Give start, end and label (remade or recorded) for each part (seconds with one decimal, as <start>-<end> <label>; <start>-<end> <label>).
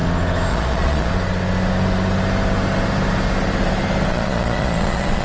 0.0-0.5 recorded; 0.5-1.1 remade; 1.1-4.1 recorded; 4.1-5.2 remade